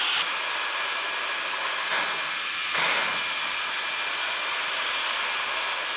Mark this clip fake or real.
real